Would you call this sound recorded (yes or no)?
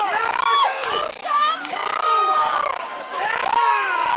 no